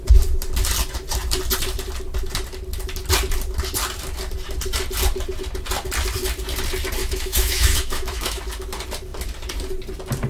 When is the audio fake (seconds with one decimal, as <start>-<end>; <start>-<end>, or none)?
7.0-8.4